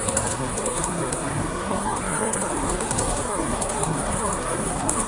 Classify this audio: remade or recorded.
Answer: remade